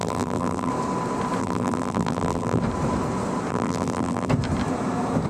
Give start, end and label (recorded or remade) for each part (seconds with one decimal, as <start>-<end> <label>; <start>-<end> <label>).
0.0-0.7 remade; 0.7-1.4 recorded; 1.4-2.6 remade; 2.6-3.5 recorded; 3.5-4.3 remade; 4.3-5.3 recorded